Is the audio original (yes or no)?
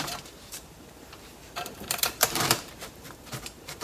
no